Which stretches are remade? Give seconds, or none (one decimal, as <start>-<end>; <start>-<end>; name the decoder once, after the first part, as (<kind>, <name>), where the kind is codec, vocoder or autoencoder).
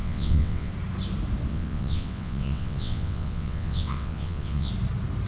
0.0-0.7 (vocoder, WaveNeXt); 1.5-4.7